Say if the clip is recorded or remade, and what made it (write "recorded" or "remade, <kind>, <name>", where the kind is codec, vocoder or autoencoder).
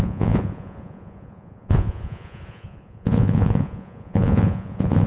remade, vocoder, Vocos